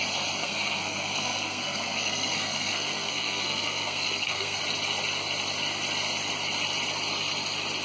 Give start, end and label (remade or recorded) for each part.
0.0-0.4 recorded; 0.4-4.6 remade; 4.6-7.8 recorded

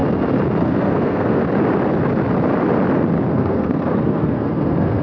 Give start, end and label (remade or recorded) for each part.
0.0-0.6 recorded; 0.6-1.4 remade; 1.4-3.3 recorded; 3.3-5.0 remade

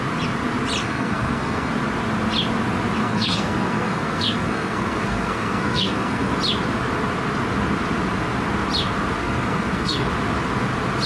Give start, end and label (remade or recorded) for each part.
0.0-0.8 recorded; 0.8-1.7 remade; 1.7-3.0 recorded; 3.0-6.3 remade; 6.3-9.2 recorded; 9.2-10.1 remade; 10.1-11.1 recorded

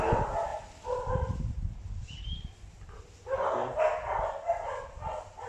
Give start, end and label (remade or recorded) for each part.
0.0-5.5 recorded

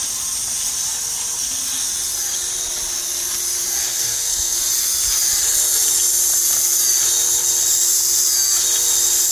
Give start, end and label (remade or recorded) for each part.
0.0-3.8 recorded; 3.8-4.6 remade; 4.6-9.3 recorded

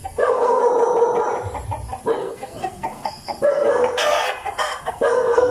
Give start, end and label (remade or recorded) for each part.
0.0-0.6 remade; 0.6-2.2 recorded; 2.2-5.5 remade

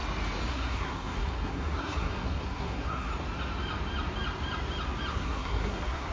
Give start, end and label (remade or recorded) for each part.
0.0-0.5 recorded; 0.5-3.1 remade; 3.1-5.1 recorded; 5.1-6.1 remade